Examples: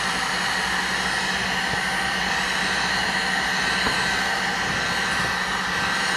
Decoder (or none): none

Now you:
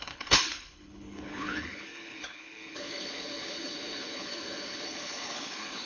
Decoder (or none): codec, HILCodec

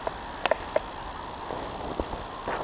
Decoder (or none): none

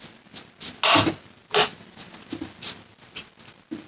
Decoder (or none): none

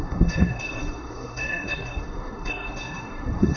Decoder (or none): codec, SNAC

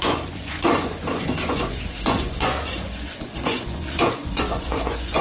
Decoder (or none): vocoder, Vocos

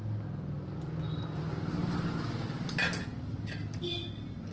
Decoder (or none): none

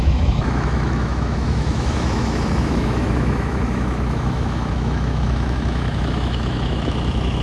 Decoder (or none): autoencoder, DAC-VAE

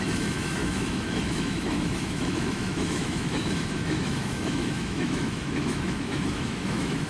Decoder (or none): autoencoder, DAC-VAE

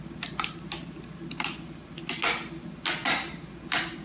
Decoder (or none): none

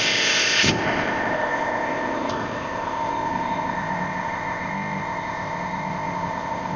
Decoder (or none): codec, ZipCodec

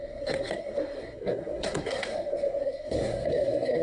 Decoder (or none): codec, SNAC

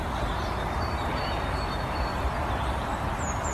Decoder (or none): vocoder, BigVGAN v2